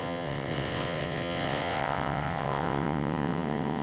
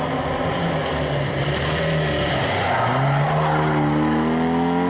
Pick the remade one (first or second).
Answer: first